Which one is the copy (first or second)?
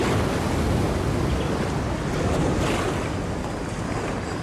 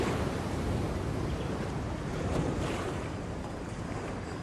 second